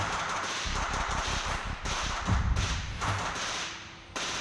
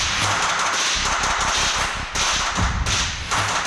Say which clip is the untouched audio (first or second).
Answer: second